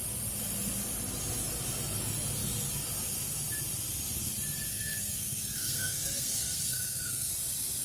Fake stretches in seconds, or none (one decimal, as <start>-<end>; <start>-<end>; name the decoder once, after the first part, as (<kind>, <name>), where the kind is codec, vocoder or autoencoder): 4.7-7.3 (codec, SNAC)